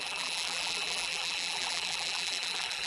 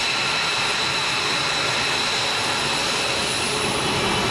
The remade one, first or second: first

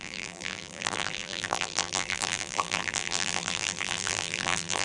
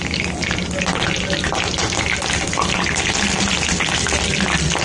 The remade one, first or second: first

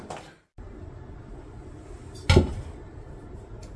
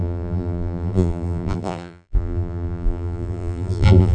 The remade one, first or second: second